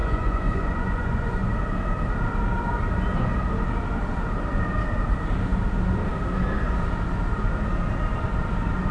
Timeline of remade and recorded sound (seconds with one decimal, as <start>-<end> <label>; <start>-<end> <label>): 0.0-1.5 remade; 1.5-8.9 recorded